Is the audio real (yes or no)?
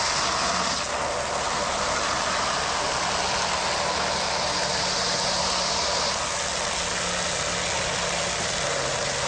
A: yes